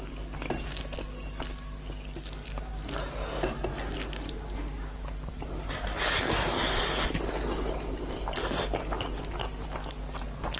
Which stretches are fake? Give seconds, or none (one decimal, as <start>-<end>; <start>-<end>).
none